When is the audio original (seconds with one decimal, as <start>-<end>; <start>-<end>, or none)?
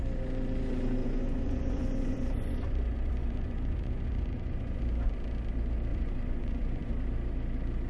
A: 0.0-1.0; 4.8-5.9; 6.9-7.9